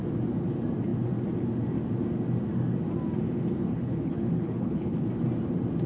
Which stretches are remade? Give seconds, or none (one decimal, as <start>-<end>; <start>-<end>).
3.7-5.1